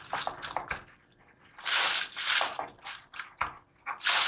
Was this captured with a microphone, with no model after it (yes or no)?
yes